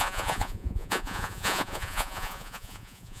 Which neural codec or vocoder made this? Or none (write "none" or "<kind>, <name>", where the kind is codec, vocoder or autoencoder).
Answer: vocoder, Vocos